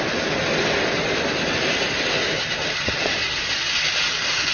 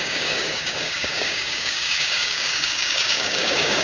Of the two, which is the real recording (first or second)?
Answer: first